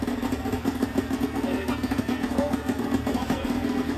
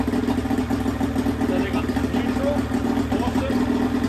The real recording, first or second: second